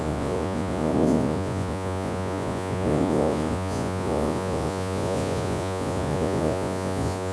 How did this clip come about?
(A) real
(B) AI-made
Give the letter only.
B